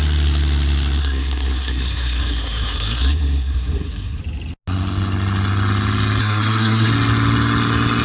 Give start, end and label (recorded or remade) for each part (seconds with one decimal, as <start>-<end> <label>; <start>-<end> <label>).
0.0-1.0 recorded; 1.0-4.2 remade; 4.2-6.2 recorded; 6.2-6.9 remade; 6.9-8.0 recorded